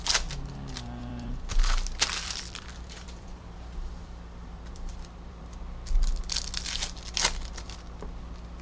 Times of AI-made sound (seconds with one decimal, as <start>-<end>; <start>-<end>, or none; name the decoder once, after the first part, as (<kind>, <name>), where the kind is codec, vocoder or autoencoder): 1.0-5.6 (vocoder, BigVGAN v2)